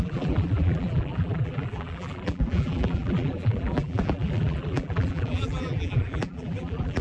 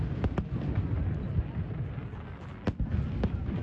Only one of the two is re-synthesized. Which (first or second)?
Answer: first